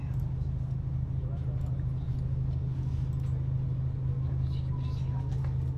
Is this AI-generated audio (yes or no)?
no